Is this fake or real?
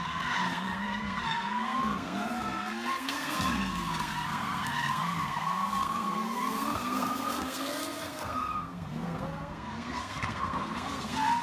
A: fake